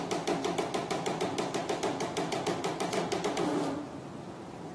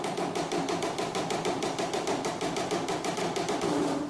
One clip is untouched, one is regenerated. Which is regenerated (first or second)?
second